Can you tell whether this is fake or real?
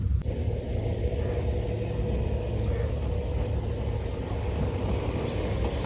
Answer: real